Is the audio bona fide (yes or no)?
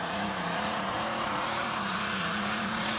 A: no